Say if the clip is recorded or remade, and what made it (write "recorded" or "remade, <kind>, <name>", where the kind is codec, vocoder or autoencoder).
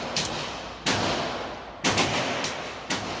recorded